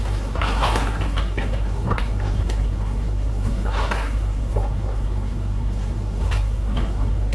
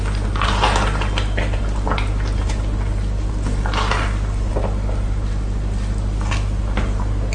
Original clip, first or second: second